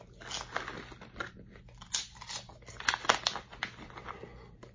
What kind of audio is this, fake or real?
real